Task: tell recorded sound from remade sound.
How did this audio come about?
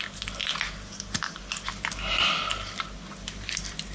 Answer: recorded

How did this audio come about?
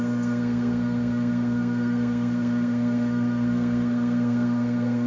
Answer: remade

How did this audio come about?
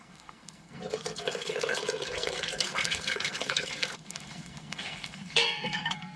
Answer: remade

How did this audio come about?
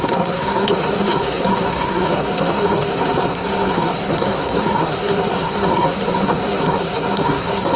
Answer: remade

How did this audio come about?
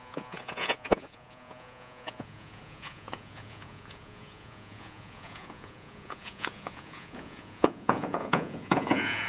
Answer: remade